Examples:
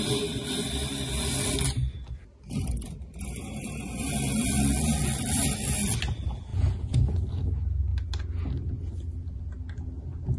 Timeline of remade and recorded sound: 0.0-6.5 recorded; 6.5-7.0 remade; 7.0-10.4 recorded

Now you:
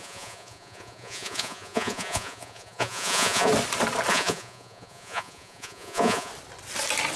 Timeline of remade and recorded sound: 0.0-3.5 remade; 3.5-4.1 recorded; 4.1-6.3 remade; 6.3-7.2 recorded

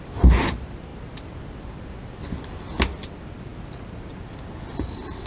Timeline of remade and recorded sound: 0.0-5.3 recorded

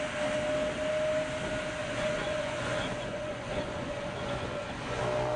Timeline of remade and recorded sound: 0.0-1.8 recorded; 1.8-5.0 remade; 5.0-5.4 recorded

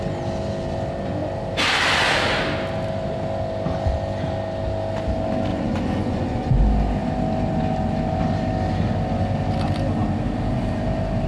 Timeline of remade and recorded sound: 0.0-5.5 recorded; 5.5-6.6 remade; 6.6-11.3 recorded

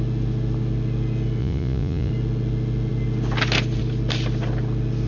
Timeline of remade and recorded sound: 0.0-1.4 recorded; 1.4-2.1 remade; 2.1-5.1 recorded